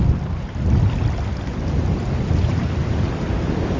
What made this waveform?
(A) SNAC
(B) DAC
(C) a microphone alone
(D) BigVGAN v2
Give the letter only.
C